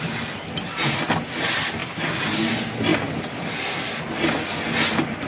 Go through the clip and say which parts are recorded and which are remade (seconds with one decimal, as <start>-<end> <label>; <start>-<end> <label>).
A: 0.0-5.3 recorded

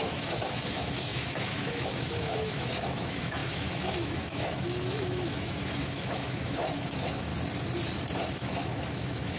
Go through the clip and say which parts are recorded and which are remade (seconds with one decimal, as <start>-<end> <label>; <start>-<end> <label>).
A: 0.0-7.3 remade; 7.3-8.3 recorded; 8.3-9.4 remade

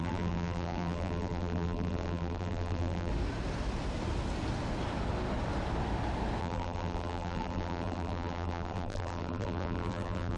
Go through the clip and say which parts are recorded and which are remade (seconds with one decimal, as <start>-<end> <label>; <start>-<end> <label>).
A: 0.0-3.1 remade; 3.1-6.4 recorded; 6.4-10.4 remade